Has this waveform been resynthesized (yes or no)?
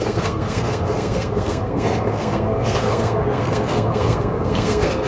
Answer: yes